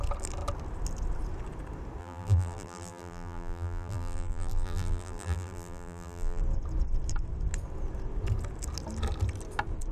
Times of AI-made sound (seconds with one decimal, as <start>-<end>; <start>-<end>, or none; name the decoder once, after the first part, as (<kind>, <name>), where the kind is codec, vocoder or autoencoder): 2.0-6.4 (vocoder, BigVGAN v2)